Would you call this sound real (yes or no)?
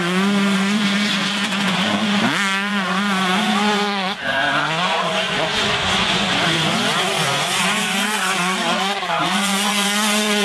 no